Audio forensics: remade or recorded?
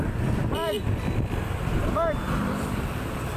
remade